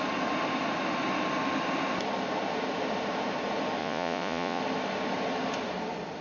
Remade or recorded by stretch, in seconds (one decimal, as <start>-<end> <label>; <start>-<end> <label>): 0.0-3.8 recorded; 3.8-4.6 remade; 4.6-6.2 recorded